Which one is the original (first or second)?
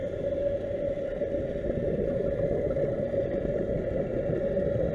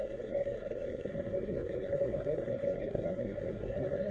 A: first